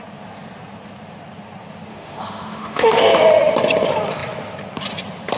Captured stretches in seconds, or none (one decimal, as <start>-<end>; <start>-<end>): 0.0-1.9; 3.0-5.4